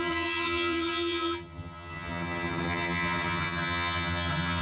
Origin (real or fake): fake